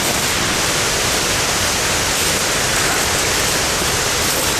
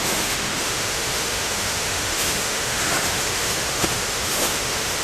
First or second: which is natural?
first